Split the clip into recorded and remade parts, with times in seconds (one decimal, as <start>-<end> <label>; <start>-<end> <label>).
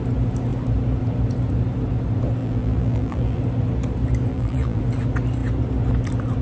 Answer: 0.0-2.4 recorded; 2.4-3.4 remade; 3.4-4.3 recorded; 4.3-4.8 remade; 4.8-6.4 recorded